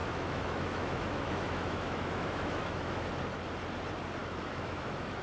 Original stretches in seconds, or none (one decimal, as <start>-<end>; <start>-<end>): 3.1-4.2